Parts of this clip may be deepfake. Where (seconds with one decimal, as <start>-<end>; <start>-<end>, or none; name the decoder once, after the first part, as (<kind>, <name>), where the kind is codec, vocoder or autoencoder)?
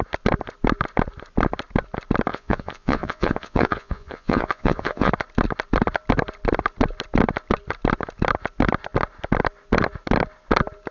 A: 2.3-5.1 (vocoder, Vocos)